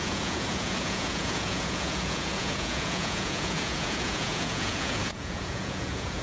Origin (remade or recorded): remade